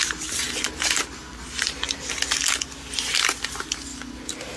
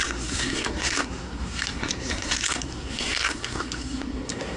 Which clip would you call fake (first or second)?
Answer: second